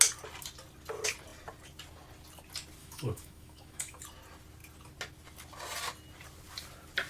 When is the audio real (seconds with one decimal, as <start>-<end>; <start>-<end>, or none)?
0.0-2.8; 4.0-7.1